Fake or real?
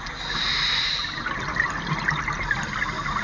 real